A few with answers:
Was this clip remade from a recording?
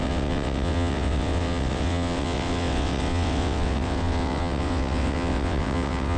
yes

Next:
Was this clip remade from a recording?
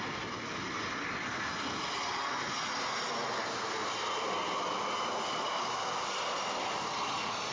no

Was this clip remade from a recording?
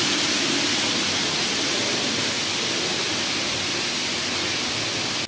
no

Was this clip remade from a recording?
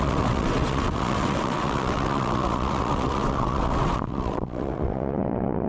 yes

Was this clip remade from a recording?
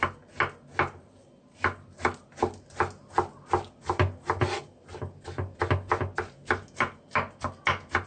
no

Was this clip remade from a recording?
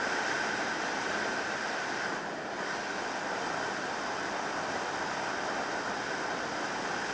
no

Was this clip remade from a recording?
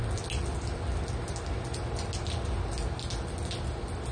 no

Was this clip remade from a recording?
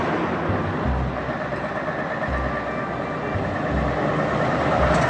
no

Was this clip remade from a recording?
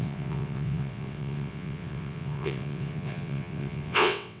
yes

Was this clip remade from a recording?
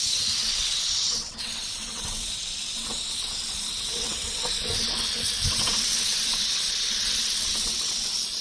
yes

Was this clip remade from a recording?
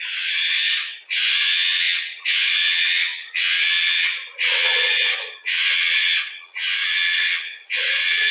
yes